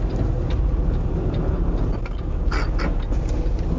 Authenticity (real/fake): real